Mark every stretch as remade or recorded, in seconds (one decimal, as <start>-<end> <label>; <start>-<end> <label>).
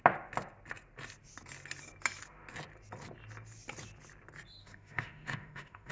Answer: 0.0-4.6 recorded; 4.6-5.9 remade